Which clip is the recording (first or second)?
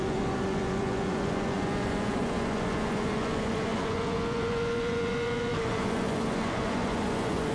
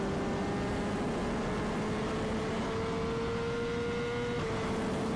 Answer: second